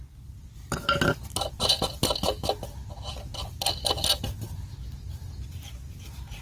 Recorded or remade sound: recorded